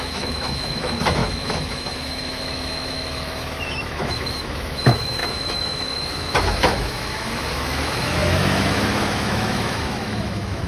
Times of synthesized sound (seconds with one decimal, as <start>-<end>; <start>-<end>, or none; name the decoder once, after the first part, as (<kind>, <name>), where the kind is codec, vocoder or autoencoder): 0.0-10.7 (autoencoder, DAC-VAE)